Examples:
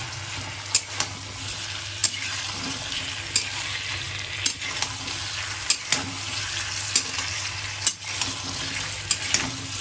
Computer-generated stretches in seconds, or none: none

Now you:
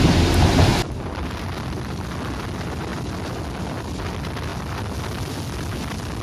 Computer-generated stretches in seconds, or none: 0.7-2.0 (vocoder, BigVGAN v2); 2.9-3.4